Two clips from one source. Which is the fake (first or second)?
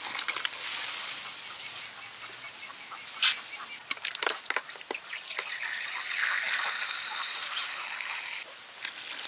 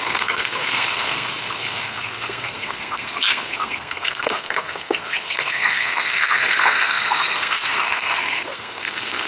second